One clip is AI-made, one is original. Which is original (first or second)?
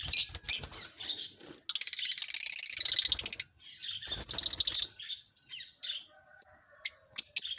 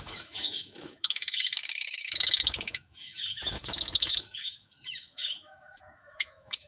first